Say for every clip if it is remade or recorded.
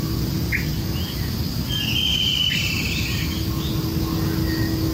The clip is recorded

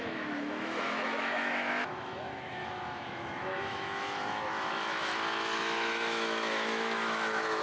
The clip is remade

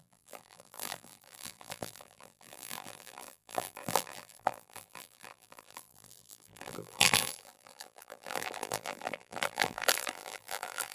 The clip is remade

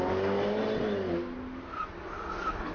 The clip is recorded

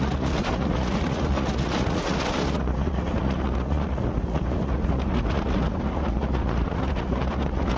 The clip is remade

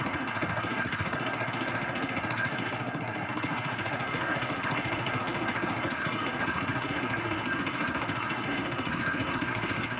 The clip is remade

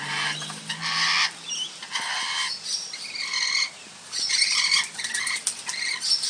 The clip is remade